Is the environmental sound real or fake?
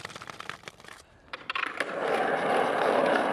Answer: fake